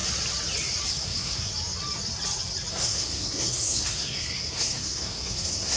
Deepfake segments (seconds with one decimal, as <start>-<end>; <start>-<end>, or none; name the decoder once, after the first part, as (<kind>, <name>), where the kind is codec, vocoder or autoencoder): 0.9-1.5 (codec, SNAC); 2.7-5.8